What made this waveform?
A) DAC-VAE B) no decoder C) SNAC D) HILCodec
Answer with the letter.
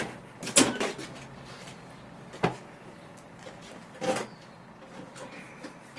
B